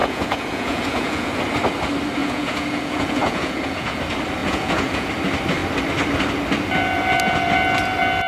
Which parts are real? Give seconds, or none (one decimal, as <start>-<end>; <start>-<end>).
1.4-2.2; 4.0-4.4; 5.1-8.3